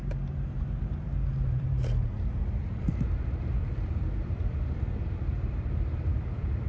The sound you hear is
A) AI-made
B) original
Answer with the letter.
A